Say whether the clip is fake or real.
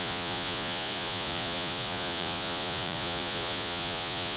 fake